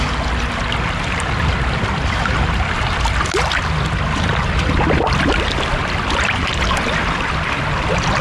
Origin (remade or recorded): recorded